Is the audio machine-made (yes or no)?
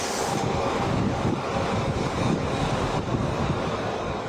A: yes